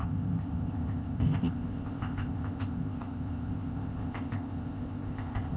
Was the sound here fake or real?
fake